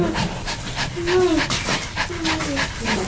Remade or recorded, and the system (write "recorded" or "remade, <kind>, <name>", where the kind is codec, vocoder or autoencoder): recorded